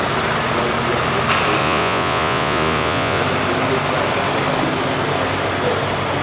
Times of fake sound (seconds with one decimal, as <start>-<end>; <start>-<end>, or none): 1.6-3.2